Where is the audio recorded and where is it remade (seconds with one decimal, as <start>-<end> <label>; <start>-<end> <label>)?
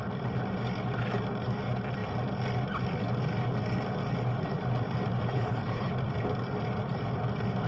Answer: 0.0-5.3 recorded; 5.3-5.9 remade; 5.9-7.7 recorded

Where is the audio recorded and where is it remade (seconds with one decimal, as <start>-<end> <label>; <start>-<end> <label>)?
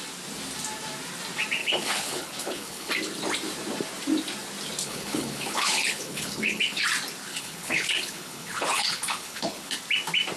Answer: 0.0-1.6 recorded; 1.6-2.9 remade; 2.9-4.8 recorded; 4.8-6.8 remade; 6.8-7.3 recorded; 7.3-9.8 remade; 9.8-10.4 recorded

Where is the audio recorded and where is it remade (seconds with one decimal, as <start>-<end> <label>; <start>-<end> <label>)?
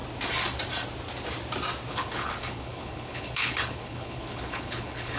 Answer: 0.0-1.9 recorded; 1.9-5.2 remade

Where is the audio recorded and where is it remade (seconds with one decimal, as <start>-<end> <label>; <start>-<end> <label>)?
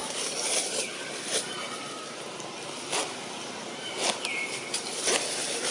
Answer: 0.0-5.7 recorded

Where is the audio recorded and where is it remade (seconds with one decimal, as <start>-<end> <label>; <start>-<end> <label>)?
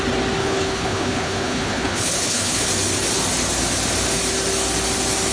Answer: 0.0-0.4 recorded; 0.4-2.7 remade; 2.7-5.3 recorded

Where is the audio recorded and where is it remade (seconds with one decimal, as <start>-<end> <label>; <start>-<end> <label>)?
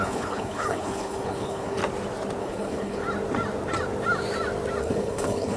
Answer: 0.0-1.8 remade; 1.8-2.4 recorded; 2.4-3.0 remade; 3.0-4.8 recorded; 4.8-5.6 remade